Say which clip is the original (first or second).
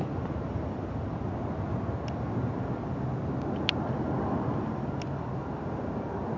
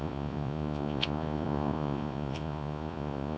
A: first